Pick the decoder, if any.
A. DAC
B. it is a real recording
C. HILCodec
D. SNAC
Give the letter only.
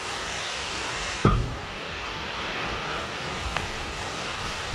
A